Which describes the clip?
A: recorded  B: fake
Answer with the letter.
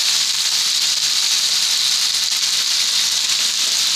A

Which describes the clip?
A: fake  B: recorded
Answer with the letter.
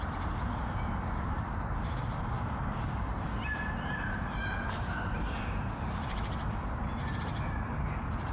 A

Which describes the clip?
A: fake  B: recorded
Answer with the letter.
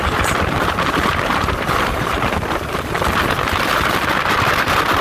A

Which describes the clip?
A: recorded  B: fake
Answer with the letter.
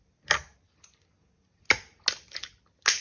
A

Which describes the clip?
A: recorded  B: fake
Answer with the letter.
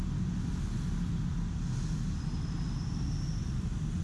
A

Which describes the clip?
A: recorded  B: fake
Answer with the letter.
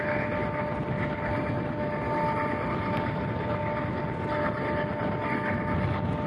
A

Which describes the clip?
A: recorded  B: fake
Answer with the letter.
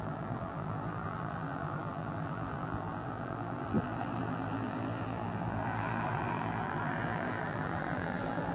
B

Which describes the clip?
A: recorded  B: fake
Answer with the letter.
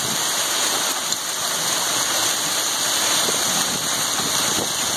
A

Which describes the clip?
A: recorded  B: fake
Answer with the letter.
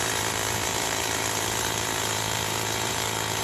B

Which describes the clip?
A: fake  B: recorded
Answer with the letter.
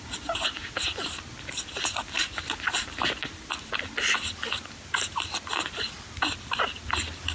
B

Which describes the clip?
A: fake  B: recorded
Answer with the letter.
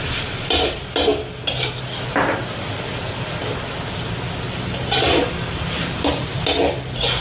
B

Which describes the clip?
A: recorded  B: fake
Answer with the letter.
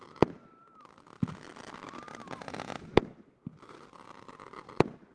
A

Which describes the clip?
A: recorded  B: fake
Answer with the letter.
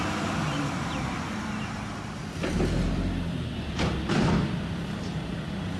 B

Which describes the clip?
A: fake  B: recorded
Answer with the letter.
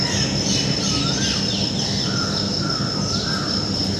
B